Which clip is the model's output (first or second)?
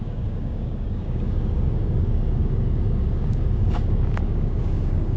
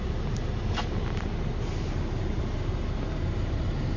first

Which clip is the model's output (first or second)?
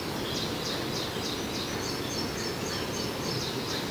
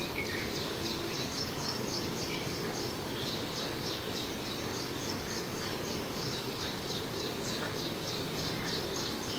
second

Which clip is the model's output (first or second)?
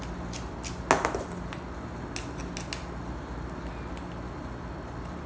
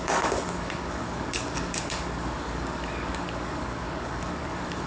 second